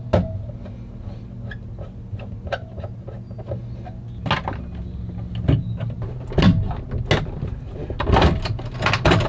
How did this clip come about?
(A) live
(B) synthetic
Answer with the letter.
A